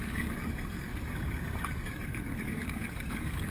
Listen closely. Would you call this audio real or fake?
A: fake